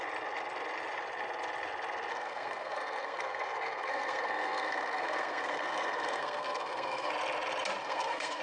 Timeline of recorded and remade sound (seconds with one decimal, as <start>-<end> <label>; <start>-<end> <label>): 0.0-2.1 recorded; 2.1-7.1 remade; 7.1-7.8 recorded; 7.8-8.4 remade